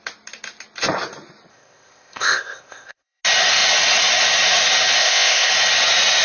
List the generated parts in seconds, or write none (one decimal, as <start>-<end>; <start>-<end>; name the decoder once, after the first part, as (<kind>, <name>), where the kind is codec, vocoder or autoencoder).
1.5-3.2 (codec, ZipCodec); 5.0-5.5